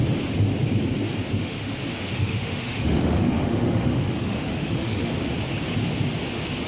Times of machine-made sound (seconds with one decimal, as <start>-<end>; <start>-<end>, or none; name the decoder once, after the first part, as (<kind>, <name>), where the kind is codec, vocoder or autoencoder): 1.4-5.1 (autoencoder, DAC-VAE)